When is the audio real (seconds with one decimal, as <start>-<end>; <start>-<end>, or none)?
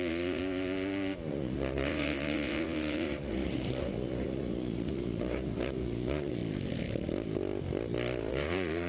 0.4-1.3; 6.4-8.3